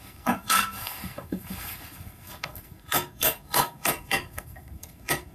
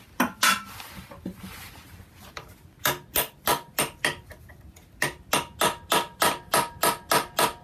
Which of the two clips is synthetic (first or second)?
first